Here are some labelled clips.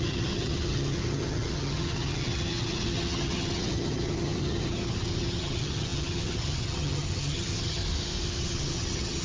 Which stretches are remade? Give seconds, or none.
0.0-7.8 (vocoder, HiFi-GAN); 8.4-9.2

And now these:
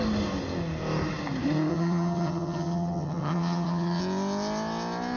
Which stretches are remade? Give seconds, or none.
1.7-4.0 (vocoder, HiFi-GAN)

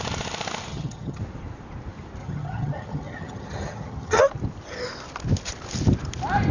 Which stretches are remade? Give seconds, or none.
0.7-1.2 (vocoder, HiFi-GAN); 2.2-4.2